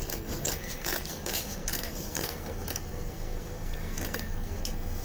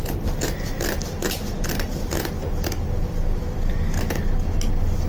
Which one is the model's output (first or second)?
first